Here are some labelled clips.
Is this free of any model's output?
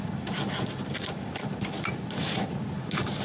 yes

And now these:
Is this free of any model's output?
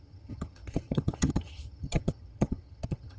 no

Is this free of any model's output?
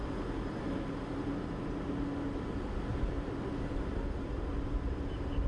yes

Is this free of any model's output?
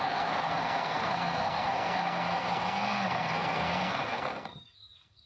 no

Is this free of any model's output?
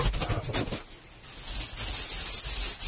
yes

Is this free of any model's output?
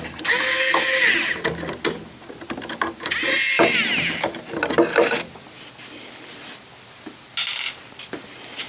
yes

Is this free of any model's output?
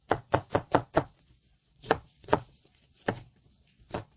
no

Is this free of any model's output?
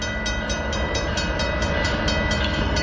yes